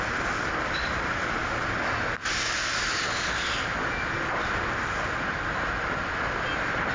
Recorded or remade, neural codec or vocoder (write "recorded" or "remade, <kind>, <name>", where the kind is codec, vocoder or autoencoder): recorded